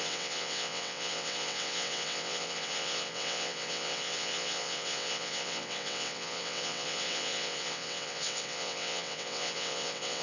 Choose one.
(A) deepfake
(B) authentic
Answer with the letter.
A